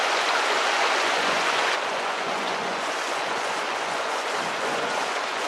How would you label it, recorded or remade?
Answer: remade